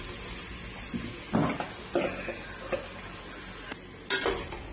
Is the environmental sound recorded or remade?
recorded